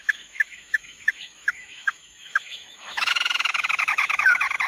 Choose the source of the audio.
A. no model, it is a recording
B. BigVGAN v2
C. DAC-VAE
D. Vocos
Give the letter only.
C